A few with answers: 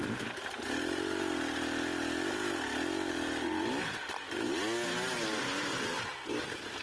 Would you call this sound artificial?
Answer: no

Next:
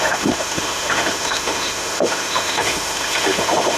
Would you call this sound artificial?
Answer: yes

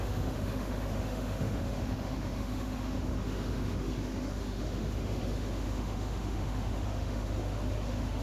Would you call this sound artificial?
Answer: yes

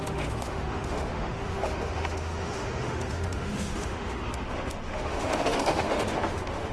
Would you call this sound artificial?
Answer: yes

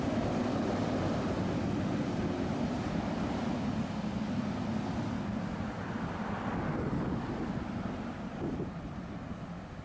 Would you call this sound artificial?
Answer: no